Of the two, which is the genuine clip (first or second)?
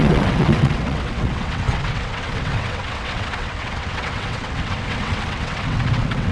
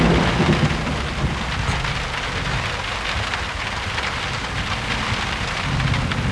second